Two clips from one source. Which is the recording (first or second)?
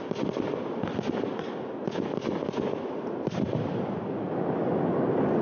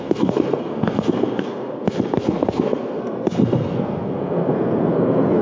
first